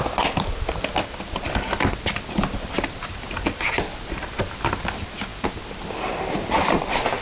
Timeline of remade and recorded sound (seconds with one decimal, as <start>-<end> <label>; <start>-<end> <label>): 0.0-7.2 recorded